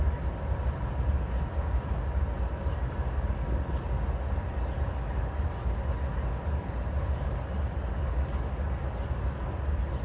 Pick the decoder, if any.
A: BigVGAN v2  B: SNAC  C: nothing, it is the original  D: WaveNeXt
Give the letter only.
C